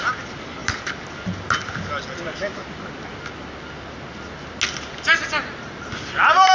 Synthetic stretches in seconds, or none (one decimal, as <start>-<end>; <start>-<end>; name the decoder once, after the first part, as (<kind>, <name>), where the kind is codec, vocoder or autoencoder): none